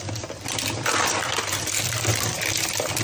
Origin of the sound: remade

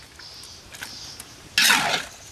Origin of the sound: recorded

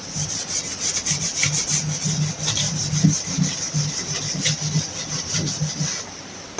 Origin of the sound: recorded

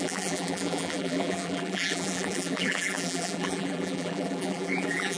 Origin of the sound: remade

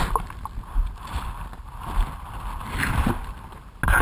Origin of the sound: recorded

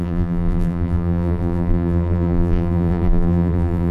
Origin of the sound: remade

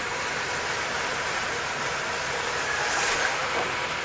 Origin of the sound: remade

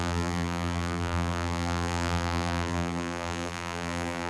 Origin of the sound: remade